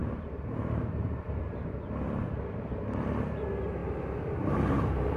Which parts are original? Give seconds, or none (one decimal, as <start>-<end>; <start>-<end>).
1.2-3.8